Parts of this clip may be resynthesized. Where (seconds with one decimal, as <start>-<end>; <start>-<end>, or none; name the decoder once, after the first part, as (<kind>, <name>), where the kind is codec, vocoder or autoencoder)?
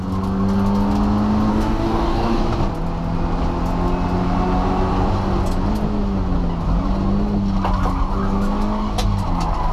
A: 1.5-2.4 (codec, DAC)